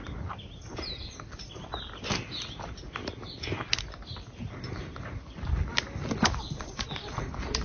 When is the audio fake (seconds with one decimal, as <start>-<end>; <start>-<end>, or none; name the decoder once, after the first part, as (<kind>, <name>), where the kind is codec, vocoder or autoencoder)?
0.0-1.7 (vocoder, BigVGAN v2); 6.3-7.6